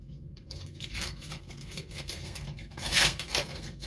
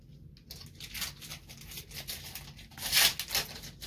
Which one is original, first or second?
second